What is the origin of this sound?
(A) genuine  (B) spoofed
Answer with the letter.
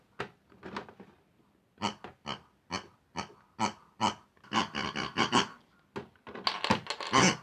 A